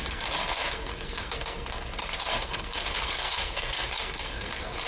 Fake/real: fake